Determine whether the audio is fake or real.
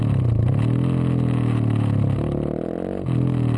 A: real